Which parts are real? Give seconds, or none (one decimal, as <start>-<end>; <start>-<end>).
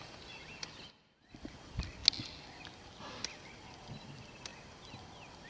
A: 0.0-5.5